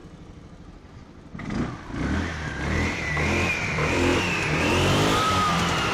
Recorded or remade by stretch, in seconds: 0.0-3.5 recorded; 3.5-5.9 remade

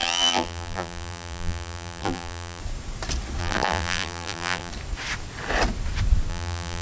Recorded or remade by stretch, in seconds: 0.0-2.6 remade; 2.6-3.4 recorded; 3.4-4.7 remade; 4.7-6.3 recorded; 6.3-6.8 remade

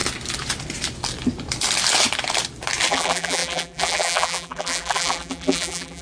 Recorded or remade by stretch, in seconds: 0.0-2.9 recorded; 2.9-6.0 remade

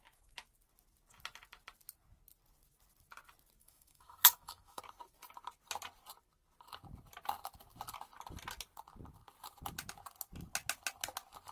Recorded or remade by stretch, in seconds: 0.0-3.6 recorded; 3.6-4.8 remade; 4.8-11.5 recorded

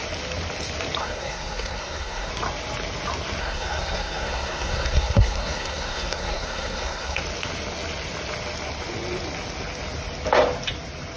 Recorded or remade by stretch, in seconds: 0.0-1.0 recorded; 1.0-2.3 remade; 2.3-3.4 recorded; 3.4-7.2 remade; 7.2-11.2 recorded

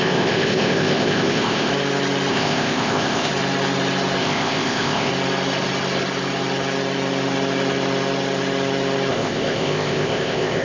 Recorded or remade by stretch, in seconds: 0.0-1.7 remade; 1.7-2.3 recorded; 2.3-3.3 remade; 3.3-4.2 recorded; 4.2-5.1 remade; 5.1-9.1 recorded; 9.1-10.6 remade

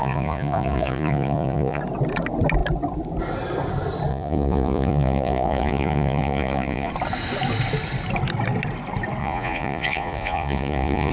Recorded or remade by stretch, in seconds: 0.0-1.8 remade; 1.8-4.1 recorded; 4.1-6.9 remade; 6.9-9.2 recorded; 9.2-11.1 remade

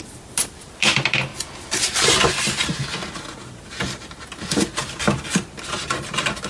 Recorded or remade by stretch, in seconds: 0.0-6.5 recorded